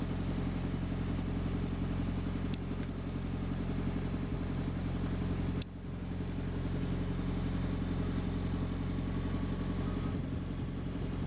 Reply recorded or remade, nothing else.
recorded